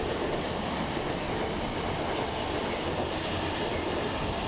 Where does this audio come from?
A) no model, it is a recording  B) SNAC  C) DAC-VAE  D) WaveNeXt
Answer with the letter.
A